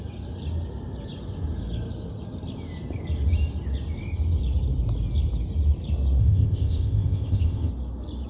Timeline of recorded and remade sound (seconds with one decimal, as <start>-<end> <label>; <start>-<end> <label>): 0.0-6.2 recorded; 6.2-7.7 remade; 7.7-8.3 recorded